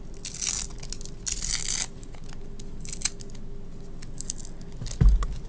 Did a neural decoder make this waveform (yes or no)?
no